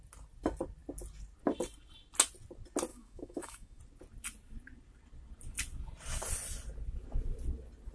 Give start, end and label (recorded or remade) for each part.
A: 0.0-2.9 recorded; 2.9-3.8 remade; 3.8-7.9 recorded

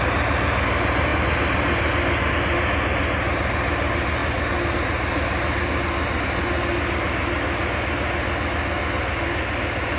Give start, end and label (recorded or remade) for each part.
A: 0.0-10.0 recorded

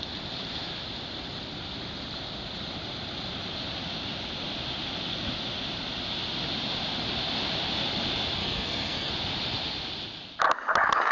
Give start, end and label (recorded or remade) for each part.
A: 0.0-8.4 recorded; 8.4-9.1 remade; 9.1-11.1 recorded

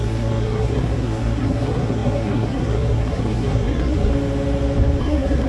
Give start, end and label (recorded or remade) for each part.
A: 0.0-4.1 remade; 4.1-5.0 recorded; 5.0-5.5 remade

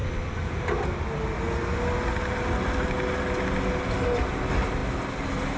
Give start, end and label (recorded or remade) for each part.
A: 0.0-0.6 remade; 0.6-5.6 recorded

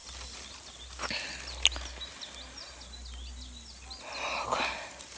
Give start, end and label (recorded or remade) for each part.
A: 0.0-5.2 recorded